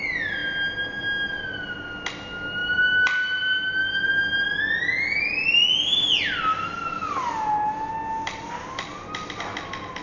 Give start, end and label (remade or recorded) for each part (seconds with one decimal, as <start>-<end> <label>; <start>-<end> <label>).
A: 0.0-10.0 recorded